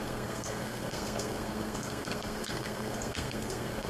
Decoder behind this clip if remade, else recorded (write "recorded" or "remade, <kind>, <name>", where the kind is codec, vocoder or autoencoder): remade, codec, SNAC